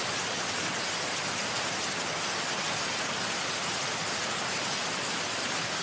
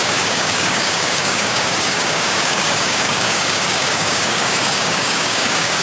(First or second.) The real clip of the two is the first